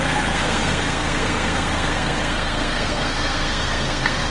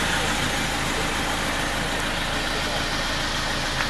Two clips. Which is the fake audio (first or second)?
first